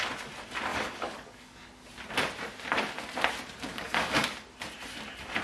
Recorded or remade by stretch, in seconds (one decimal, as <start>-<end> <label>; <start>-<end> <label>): 0.0-0.7 recorded; 0.7-1.9 remade; 1.9-3.7 recorded; 3.7-4.3 remade; 4.3-5.4 recorded